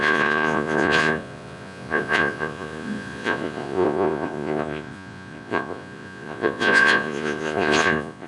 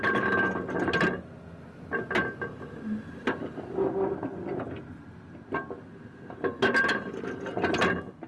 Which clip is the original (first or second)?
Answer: second